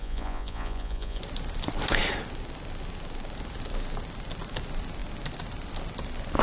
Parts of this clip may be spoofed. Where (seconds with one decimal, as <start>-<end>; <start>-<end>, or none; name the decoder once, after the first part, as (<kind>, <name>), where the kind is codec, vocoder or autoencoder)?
0.0-1.2 (vocoder, Vocos)